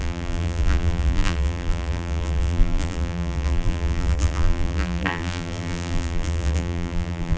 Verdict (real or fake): fake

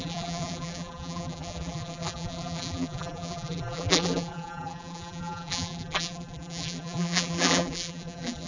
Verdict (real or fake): fake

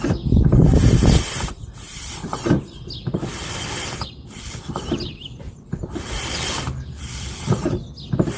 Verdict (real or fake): real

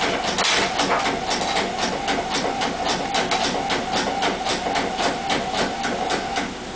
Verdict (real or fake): real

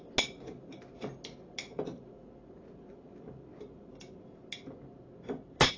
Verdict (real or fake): real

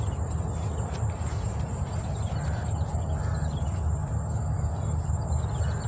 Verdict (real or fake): real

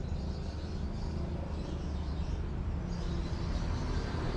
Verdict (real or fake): real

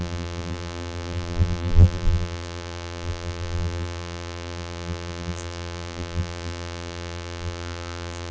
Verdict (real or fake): fake